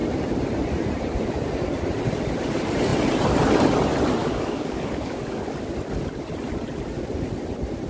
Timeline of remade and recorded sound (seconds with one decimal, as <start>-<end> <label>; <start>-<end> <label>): 0.0-4.2 recorded; 4.2-5.5 remade; 5.5-7.9 recorded